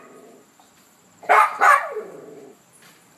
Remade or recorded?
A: remade